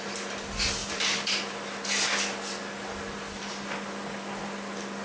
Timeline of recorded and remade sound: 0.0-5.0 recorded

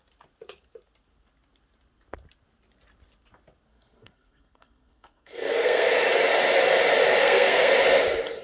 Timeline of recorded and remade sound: 0.0-3.7 recorded; 3.7-5.9 remade; 5.9-7.2 recorded; 7.2-7.7 remade; 7.7-8.4 recorded

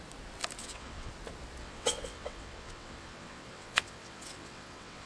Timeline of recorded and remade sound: 0.0-0.6 recorded; 0.6-1.1 remade; 1.1-1.6 recorded; 1.6-5.1 remade

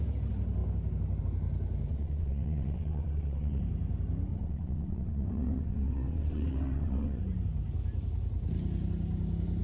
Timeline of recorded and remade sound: 0.0-1.9 recorded; 1.9-3.6 remade; 3.6-4.3 recorded; 4.3-7.2 remade; 7.2-9.6 recorded

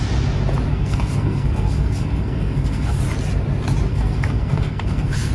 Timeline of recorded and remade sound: 0.0-0.7 recorded; 0.7-3.0 remade; 3.0-3.9 recorded; 3.9-5.3 remade

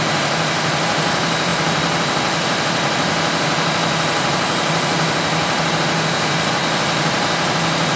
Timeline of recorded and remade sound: 0.0-8.0 recorded

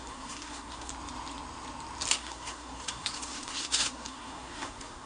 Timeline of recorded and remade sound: 0.0-0.9 remade; 0.9-2.1 recorded; 2.1-5.1 remade